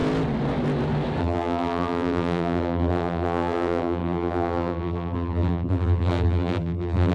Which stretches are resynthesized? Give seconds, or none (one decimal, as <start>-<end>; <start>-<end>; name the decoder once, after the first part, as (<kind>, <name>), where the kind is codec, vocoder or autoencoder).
1.2-7.1 (vocoder, BigVGAN v2)

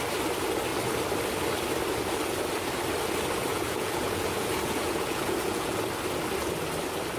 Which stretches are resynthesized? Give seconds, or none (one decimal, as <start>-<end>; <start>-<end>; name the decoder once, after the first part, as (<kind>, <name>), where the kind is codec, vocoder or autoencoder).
3.5-5.8 (vocoder, Vocos)

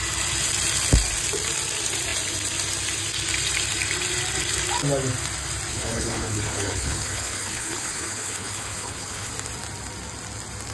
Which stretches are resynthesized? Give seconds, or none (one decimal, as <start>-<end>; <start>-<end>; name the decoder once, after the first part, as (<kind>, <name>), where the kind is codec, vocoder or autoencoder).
5.7-9.3 (codec, HILCodec)

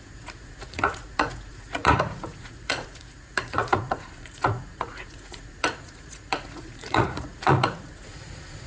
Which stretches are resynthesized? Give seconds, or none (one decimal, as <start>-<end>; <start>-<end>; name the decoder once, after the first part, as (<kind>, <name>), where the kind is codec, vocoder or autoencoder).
0.0-8.7 (vocoder, Vocos)

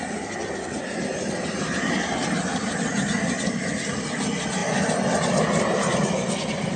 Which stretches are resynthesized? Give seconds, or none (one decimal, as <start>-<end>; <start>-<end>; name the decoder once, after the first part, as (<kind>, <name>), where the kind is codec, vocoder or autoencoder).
none

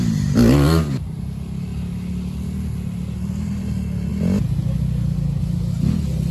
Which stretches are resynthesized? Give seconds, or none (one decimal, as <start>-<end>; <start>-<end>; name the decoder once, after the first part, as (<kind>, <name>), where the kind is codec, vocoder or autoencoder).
none

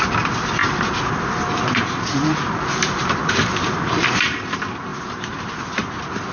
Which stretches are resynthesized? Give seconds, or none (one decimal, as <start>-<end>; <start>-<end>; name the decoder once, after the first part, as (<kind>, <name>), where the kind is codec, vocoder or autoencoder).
0.6-4.4 (vocoder, BigVGAN v2); 4.9-5.6